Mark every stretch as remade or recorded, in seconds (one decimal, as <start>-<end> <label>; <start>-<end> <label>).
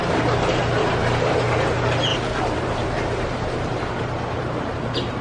0.0-2.1 recorded; 2.1-5.2 remade